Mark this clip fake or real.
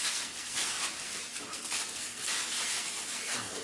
fake